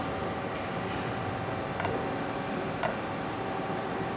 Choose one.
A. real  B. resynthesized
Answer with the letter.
A